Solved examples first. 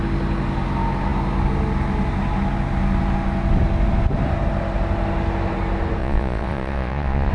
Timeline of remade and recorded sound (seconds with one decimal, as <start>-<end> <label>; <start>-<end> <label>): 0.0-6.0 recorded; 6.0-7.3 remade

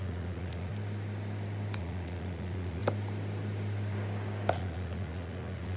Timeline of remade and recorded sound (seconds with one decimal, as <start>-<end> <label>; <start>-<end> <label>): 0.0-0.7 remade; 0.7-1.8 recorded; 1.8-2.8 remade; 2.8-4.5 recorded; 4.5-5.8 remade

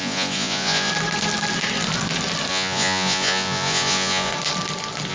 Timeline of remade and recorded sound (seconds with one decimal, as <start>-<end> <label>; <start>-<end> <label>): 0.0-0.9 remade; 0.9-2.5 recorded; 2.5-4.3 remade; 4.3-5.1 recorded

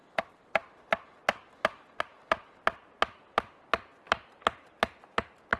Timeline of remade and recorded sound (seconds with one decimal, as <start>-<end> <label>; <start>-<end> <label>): 0.0-5.6 recorded

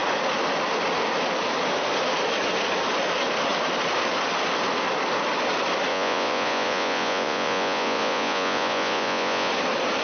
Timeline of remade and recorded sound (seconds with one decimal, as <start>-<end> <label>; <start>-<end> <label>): 0.0-5.9 recorded; 5.9-9.5 remade; 9.5-10.0 recorded

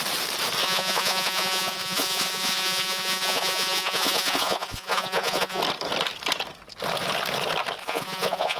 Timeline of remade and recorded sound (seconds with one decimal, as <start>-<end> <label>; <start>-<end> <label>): 0.0-0.6 recorded; 0.6-5.6 remade; 5.6-7.8 recorded; 7.8-8.6 remade